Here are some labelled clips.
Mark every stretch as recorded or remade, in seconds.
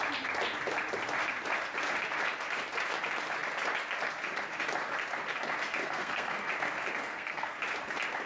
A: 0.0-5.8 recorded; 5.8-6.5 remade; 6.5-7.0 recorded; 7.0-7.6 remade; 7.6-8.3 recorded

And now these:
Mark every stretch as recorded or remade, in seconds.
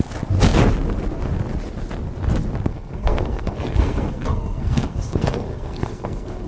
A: 0.0-2.7 recorded; 2.7-6.5 remade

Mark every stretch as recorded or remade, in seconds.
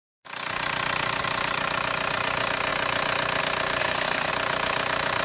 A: 0.0-3.8 recorded; 3.8-4.3 remade; 4.3-5.2 recorded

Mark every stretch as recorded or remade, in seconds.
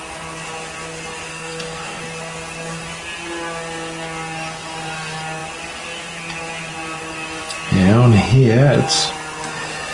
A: 0.0-1.3 recorded; 1.3-2.0 remade; 2.0-9.9 recorded